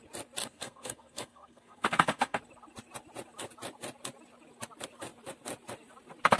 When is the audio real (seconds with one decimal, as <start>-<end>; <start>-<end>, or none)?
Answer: 0.0-0.4; 2.4-6.4